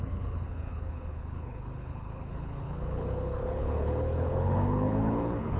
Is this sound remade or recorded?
remade